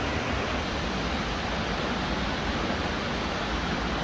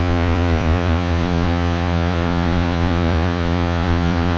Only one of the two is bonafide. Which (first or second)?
first